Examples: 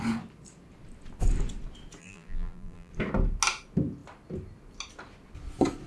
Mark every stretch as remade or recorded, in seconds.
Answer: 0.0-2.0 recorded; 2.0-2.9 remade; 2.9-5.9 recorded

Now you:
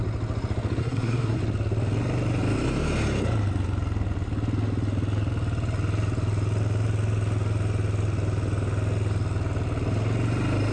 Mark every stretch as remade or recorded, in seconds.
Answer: 0.0-0.8 recorded; 0.8-1.4 remade; 1.4-10.7 recorded

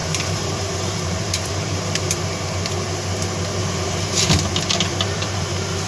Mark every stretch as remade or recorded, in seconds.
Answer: 0.0-2.2 remade; 2.2-3.6 recorded; 3.6-4.3 remade; 4.3-4.9 recorded; 4.9-5.9 remade

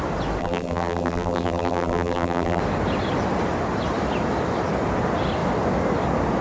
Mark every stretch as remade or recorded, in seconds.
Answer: 0.0-0.4 recorded; 0.4-2.6 remade; 2.6-6.4 recorded

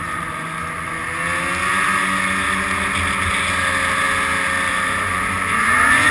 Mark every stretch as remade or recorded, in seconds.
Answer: 0.0-1.0 remade; 1.0-4.7 recorded; 4.7-6.1 remade

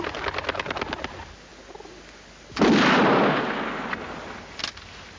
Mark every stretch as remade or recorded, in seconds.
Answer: 0.0-5.2 recorded

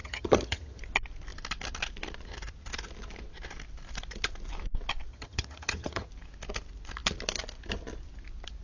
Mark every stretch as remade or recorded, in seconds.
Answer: 0.0-0.8 remade; 0.8-5.1 recorded; 5.1-6.1 remade; 6.1-8.6 recorded

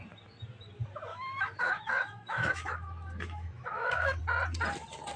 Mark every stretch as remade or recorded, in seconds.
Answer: 0.0-1.1 recorded; 1.1-4.2 remade; 4.2-5.2 recorded